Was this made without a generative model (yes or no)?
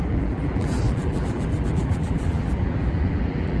no